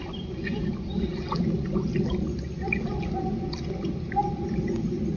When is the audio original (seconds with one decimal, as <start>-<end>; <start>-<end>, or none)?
0.0-5.2